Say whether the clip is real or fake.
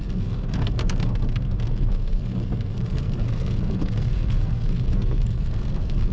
fake